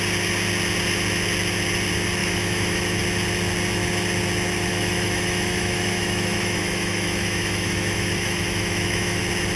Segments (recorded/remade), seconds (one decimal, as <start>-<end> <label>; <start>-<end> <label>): 0.0-2.2 recorded; 2.2-3.0 remade; 3.0-4.7 recorded; 4.7-9.2 remade; 9.2-9.6 recorded